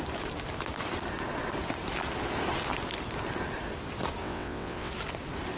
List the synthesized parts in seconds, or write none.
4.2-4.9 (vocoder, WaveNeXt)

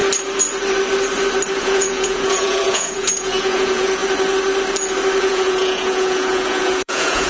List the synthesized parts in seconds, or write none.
1.6-4.0 (vocoder, Vocos); 5.2-7.3